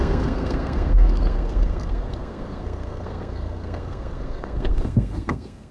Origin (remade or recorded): remade